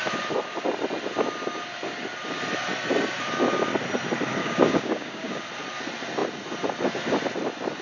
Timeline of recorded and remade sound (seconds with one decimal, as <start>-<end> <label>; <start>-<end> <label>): 0.0-4.4 recorded; 4.4-5.4 remade; 5.4-7.8 recorded